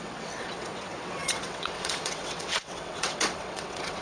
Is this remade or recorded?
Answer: remade